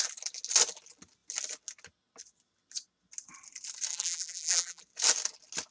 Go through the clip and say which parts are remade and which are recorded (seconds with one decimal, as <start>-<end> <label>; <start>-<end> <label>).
0.0-3.9 recorded; 3.9-4.8 remade; 4.8-5.7 recorded